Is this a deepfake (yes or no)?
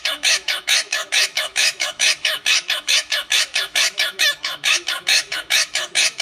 yes